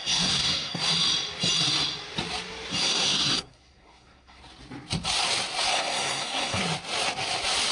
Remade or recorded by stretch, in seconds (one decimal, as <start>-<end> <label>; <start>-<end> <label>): 0.0-0.8 remade; 0.8-2.7 recorded; 2.7-4.4 remade; 4.4-5.7 recorded; 5.7-6.6 remade; 6.6-7.7 recorded